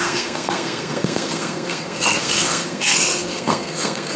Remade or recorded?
remade